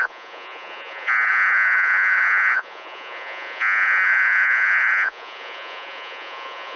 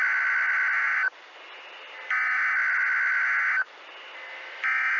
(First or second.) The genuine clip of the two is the second